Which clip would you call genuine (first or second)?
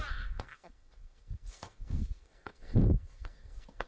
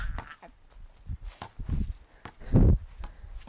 second